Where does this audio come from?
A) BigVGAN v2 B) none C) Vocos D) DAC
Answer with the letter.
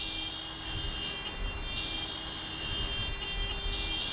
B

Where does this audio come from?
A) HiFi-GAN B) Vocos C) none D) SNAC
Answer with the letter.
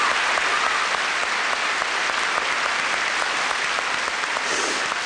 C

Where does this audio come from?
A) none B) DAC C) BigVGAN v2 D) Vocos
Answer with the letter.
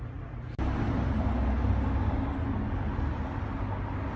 A